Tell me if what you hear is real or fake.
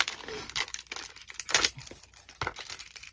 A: real